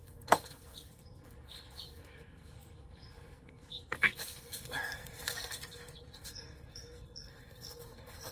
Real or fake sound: fake